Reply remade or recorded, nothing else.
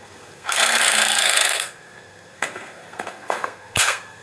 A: remade